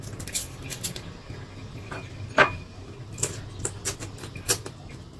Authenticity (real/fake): real